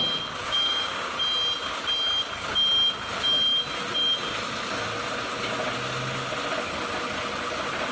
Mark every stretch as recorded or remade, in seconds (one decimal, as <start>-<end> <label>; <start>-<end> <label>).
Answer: 0.0-0.4 recorded; 0.4-1.1 remade; 1.1-7.9 recorded